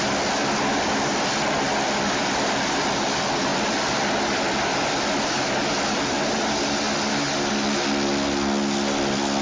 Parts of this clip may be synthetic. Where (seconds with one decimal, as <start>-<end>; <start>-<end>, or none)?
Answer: none